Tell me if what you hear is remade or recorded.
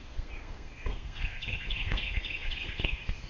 remade